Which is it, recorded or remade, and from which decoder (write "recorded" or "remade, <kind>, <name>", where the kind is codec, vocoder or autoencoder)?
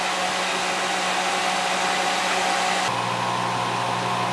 recorded